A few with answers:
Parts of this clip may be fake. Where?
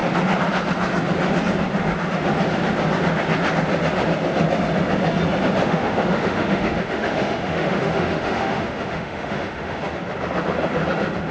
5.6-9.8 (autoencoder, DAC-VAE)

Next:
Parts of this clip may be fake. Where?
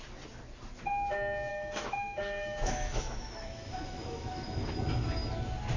1.5-4.7 (autoencoder, DAC-VAE)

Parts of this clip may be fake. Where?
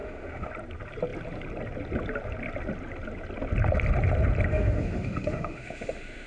0.0-0.5 (autoencoder, DAC-VAE); 4.5-6.3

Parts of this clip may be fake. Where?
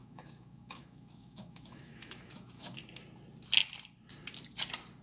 0.0-2.8 (autoencoder, DAC-VAE)